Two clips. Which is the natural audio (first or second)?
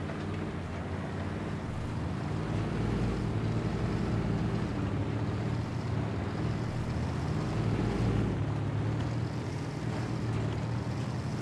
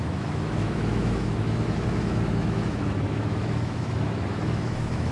first